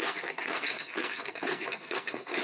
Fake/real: fake